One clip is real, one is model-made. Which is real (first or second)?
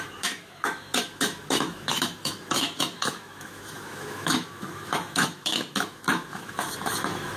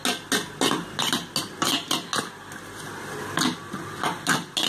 second